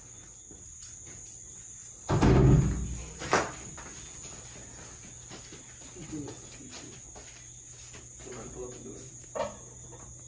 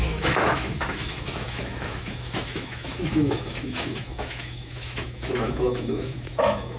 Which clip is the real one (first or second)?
first